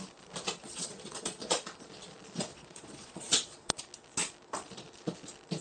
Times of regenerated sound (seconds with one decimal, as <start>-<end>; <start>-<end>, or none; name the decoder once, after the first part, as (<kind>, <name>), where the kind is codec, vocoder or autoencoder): 0.6-1.6 (vocoder, Vocos); 2.5-3.8